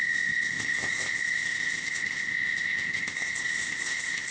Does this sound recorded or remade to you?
remade